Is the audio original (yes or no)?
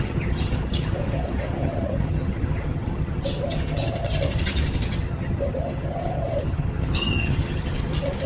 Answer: no